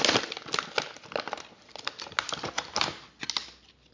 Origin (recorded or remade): recorded